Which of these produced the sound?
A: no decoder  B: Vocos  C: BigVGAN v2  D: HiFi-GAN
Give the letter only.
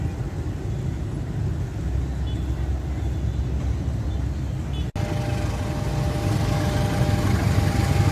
A